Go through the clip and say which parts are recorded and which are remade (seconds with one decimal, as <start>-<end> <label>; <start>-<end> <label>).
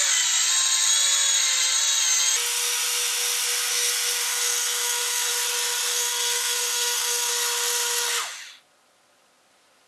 0.0-4.3 recorded; 4.3-5.3 remade; 5.3-5.9 recorded; 5.9-7.3 remade; 7.3-9.9 recorded